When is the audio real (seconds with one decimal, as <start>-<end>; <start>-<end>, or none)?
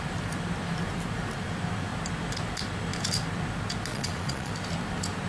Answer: 0.0-3.9; 4.5-5.3